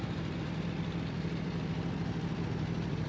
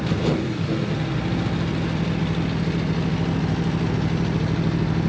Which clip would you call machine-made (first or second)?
first